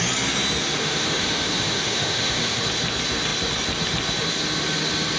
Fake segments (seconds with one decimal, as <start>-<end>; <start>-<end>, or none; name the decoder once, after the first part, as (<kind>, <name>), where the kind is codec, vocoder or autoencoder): 0.8-2.6 (autoencoder, DAC-VAE)